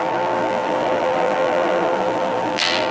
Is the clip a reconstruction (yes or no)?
yes